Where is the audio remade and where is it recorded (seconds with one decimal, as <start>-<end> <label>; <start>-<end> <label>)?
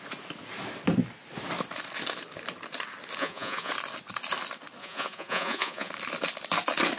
0.0-3.2 recorded; 3.2-3.7 remade; 3.7-4.8 recorded; 4.8-5.9 remade; 5.9-7.0 recorded